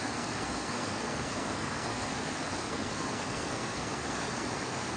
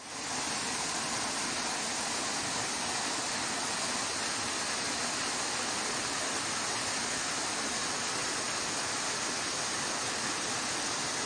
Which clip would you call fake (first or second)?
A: first